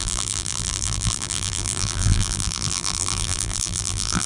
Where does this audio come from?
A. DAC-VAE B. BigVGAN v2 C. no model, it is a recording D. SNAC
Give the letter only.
B